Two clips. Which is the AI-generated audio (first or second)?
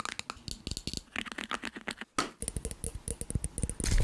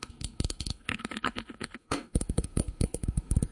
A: second